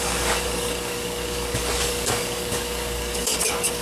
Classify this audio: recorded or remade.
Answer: remade